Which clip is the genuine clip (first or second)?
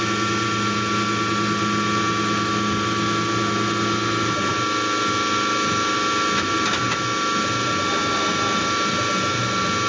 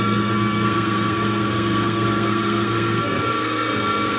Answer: first